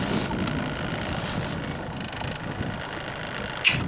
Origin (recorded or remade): recorded